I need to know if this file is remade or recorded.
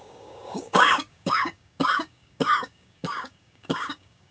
remade